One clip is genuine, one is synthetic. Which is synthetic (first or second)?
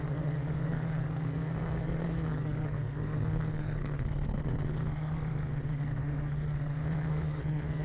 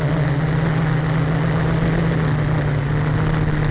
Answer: first